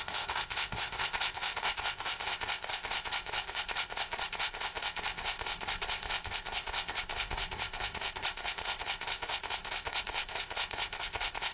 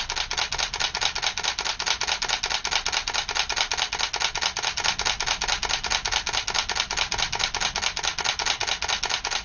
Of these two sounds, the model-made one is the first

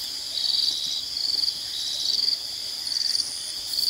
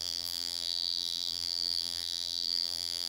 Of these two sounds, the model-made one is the second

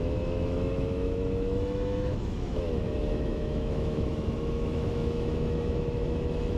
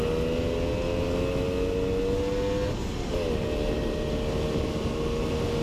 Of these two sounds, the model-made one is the first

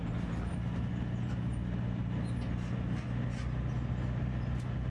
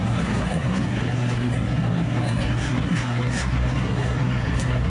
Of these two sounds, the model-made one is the second